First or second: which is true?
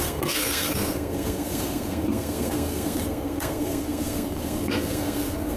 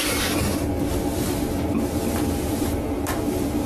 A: second